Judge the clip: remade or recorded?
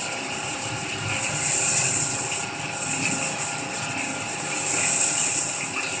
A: recorded